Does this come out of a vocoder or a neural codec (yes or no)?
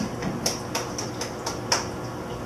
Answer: no